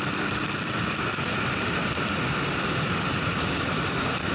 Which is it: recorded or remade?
recorded